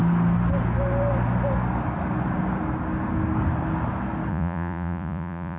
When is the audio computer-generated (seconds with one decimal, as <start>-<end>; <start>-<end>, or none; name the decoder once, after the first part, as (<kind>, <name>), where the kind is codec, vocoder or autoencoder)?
4.3-5.6 (vocoder, Vocos)

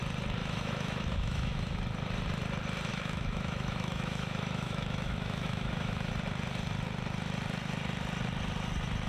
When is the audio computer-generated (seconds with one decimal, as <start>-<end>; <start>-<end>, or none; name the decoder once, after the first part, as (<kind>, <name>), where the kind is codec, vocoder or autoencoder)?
0.4-1.8 (autoencoder, DAC-VAE); 2.9-6.1